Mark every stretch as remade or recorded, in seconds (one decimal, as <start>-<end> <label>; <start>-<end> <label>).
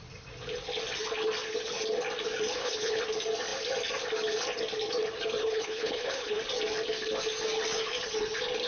0.0-2.5 recorded; 2.5-3.0 remade; 3.0-5.4 recorded; 5.4-6.4 remade; 6.4-8.7 recorded